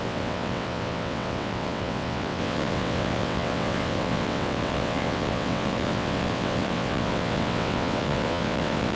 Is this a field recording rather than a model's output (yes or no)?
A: no